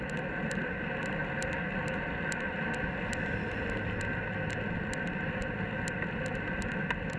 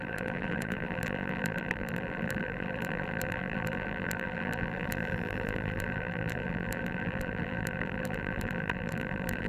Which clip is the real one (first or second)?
first